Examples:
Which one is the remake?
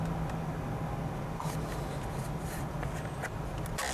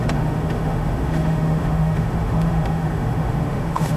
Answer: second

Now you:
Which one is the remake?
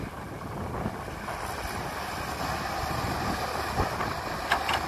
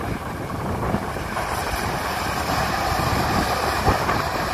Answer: second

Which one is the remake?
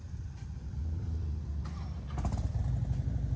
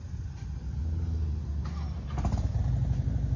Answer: first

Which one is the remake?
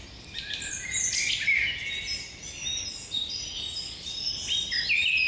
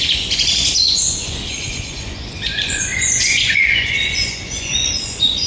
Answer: second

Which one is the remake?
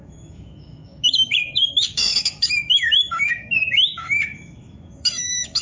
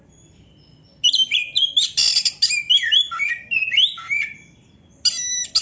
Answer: first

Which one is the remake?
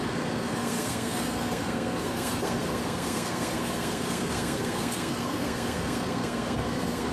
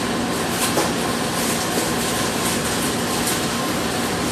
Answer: first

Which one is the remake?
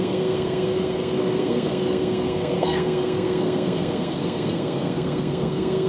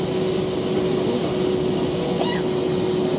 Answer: first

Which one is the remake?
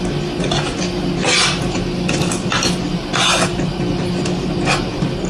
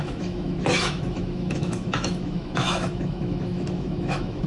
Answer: second